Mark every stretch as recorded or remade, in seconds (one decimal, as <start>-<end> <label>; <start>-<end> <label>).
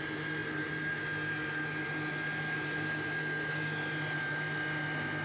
0.0-5.2 recorded